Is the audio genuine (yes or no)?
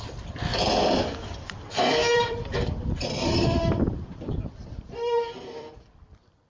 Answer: no